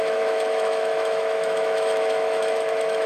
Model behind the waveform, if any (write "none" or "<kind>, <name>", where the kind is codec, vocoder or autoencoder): autoencoder, DAC-VAE